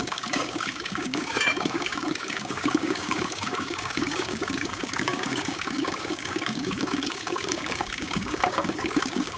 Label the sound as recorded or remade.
remade